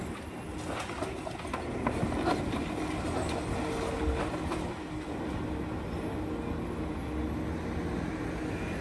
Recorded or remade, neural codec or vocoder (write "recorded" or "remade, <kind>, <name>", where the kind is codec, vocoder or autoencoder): recorded